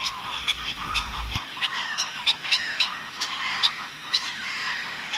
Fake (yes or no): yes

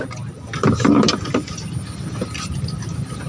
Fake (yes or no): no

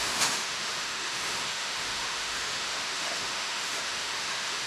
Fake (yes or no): yes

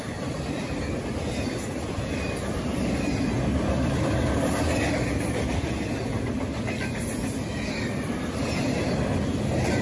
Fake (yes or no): no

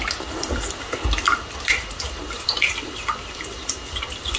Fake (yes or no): no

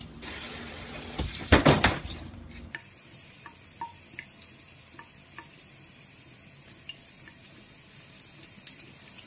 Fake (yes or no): yes